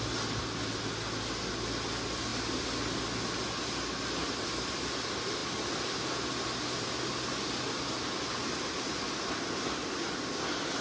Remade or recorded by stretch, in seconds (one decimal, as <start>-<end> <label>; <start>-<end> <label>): 0.0-10.8 recorded